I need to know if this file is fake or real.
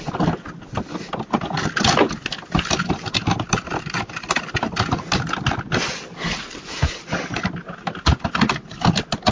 real